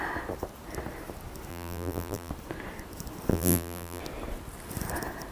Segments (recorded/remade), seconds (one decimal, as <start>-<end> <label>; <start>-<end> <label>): 0.0-1.5 recorded; 1.5-2.3 remade; 2.3-3.3 recorded; 3.3-4.0 remade; 4.0-5.3 recorded